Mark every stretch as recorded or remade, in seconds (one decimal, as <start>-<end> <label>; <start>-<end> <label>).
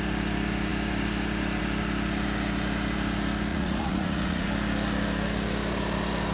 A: 0.0-3.5 recorded; 3.5-4.5 remade; 4.5-6.3 recorded